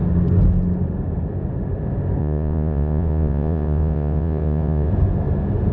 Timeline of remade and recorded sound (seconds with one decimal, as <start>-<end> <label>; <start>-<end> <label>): 0.0-2.2 recorded; 2.2-4.9 remade; 4.9-5.7 recorded